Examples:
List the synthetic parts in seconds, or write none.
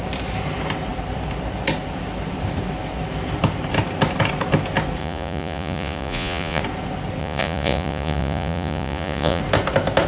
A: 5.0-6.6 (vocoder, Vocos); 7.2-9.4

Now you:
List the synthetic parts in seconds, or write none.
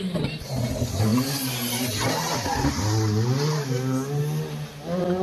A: none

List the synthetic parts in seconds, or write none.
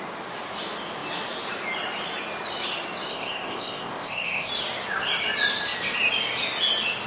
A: 3.1-4.5 (codec, ZipCodec)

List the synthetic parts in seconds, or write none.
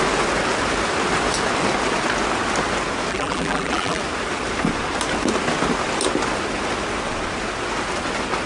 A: 3.1-4.0 (vocoder, BigVGAN v2)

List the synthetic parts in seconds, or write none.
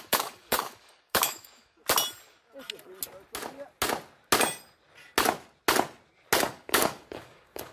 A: 0.0-1.8 (codec, DAC); 6.4-7.7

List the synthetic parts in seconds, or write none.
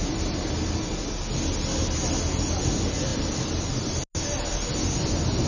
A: none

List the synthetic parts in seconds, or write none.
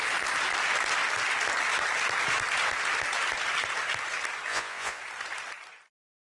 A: 4.5-5.0 (vocoder, Vocos)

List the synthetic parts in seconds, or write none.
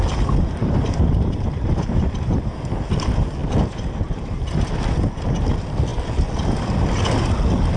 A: 0.6-2.4 (vocoder, BigVGAN v2); 3.4-4.4